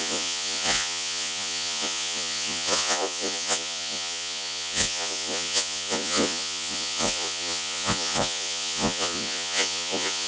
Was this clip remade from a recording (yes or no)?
yes